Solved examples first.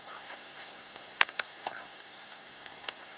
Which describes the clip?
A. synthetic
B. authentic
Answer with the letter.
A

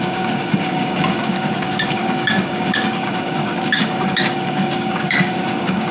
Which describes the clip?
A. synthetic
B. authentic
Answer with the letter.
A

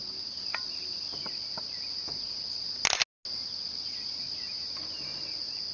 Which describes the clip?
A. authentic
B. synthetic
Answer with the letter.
A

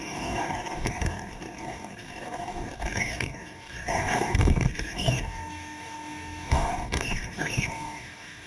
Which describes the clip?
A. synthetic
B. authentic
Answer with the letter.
A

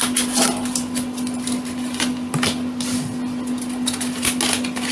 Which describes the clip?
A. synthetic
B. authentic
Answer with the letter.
B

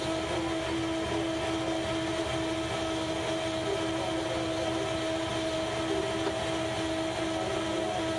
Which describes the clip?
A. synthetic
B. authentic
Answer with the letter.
B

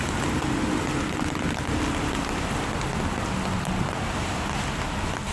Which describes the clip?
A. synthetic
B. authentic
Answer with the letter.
B